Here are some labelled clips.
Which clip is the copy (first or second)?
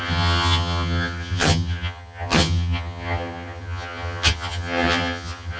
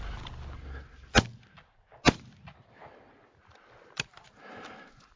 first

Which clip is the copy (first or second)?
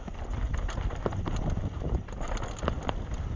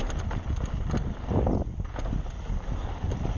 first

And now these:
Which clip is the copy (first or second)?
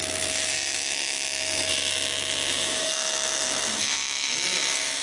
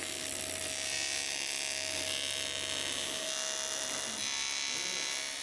first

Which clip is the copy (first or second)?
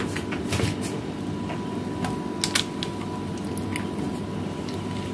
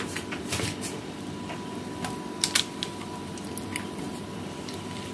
second